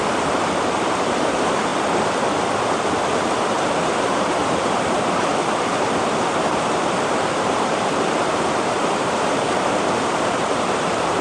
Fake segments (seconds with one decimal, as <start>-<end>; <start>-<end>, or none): 0.0-1.7; 3.0-5.3; 6.3-11.2